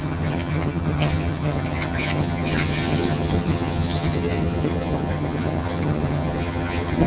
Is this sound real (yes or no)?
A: no